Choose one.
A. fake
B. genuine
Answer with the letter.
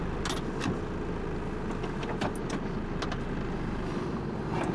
B